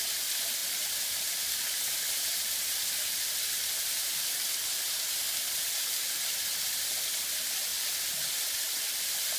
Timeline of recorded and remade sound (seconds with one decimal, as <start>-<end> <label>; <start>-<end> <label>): 0.0-9.4 recorded